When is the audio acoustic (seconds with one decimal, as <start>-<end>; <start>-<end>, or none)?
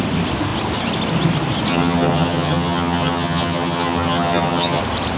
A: 0.0-1.7; 4.8-5.2